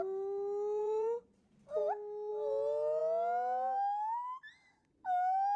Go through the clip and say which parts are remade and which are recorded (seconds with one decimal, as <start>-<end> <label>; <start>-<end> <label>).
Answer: 0.0-0.8 recorded; 0.8-1.4 remade; 1.4-5.6 recorded